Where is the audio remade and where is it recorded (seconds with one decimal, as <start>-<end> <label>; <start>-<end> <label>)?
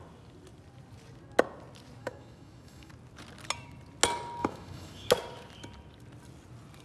0.0-2.0 recorded; 2.0-2.9 remade; 2.9-4.4 recorded; 4.4-5.1 remade; 5.1-6.8 recorded